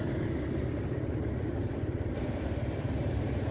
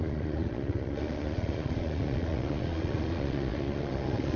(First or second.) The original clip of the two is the first